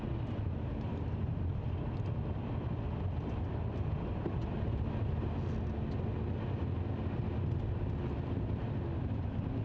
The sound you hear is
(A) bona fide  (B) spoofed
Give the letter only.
A